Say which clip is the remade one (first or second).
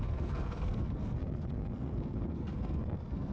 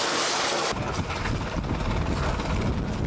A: first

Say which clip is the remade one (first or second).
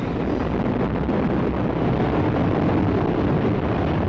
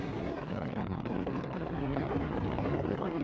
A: second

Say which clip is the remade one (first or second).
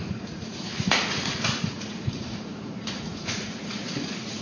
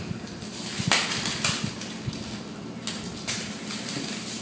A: first